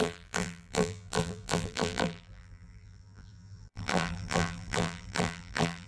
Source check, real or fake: fake